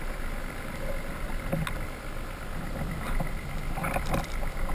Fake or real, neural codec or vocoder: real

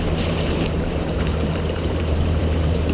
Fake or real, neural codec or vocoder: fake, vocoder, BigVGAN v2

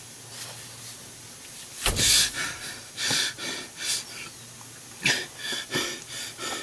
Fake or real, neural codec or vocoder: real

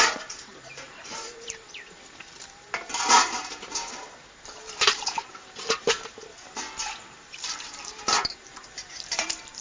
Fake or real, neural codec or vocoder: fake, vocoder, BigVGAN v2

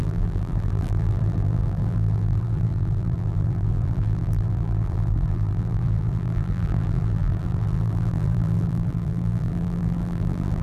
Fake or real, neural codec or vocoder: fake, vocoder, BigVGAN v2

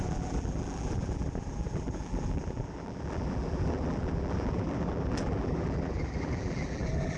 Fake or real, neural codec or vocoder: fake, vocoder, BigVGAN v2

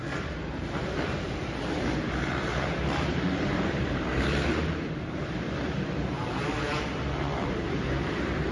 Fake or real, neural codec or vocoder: fake, vocoder, BigVGAN v2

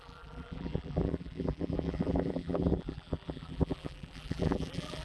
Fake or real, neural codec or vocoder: fake, vocoder, BigVGAN v2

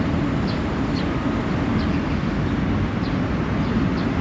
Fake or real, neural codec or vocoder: fake, vocoder, BigVGAN v2